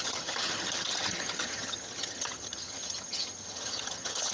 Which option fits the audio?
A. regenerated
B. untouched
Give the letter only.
A